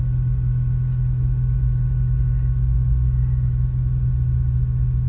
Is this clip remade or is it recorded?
recorded